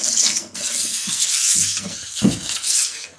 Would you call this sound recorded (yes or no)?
no